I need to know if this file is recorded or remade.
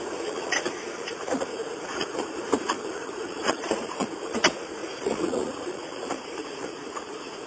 remade